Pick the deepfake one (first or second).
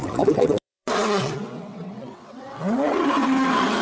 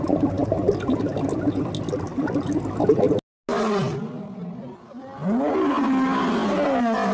first